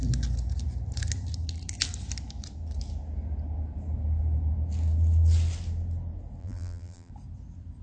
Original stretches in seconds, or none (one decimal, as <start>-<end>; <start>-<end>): 0.0-6.4; 7.1-7.8